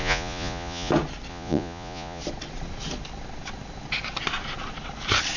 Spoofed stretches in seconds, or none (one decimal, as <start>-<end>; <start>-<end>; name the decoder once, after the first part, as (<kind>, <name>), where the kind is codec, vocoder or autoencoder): 0.0-0.9 (vocoder, Vocos); 1.3-2.2